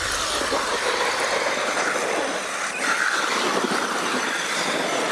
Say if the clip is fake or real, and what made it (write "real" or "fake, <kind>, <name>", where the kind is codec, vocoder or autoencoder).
real